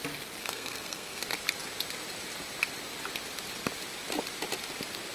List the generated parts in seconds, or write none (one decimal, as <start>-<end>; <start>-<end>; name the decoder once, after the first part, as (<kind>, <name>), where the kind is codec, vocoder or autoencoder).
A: 0.4-1.2 (codec, SNAC)